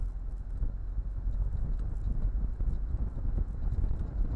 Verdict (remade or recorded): recorded